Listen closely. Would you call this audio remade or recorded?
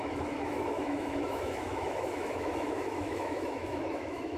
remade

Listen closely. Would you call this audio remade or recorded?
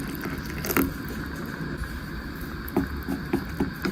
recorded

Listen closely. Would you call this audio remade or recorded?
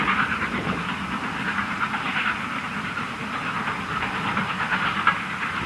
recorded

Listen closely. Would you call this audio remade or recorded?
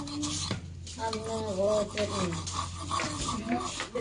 recorded